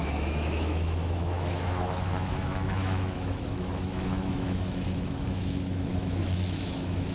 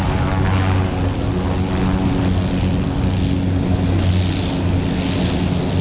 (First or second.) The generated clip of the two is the first